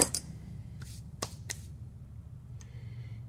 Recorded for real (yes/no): no